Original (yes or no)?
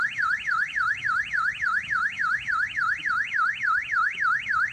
no